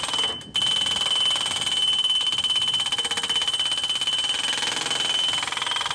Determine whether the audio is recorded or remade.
recorded